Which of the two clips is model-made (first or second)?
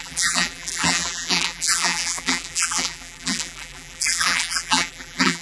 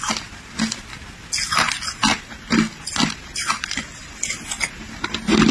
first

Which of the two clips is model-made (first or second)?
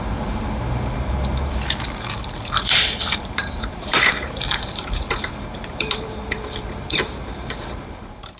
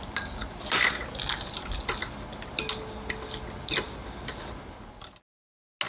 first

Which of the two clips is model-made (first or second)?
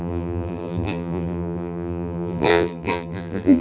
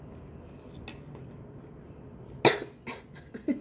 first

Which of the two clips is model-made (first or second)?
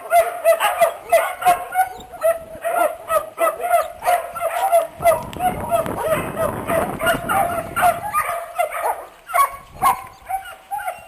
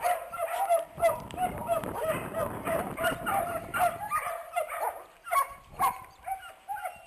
second